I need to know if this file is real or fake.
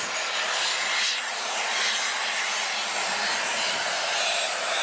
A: real